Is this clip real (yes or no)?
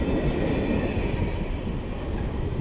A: yes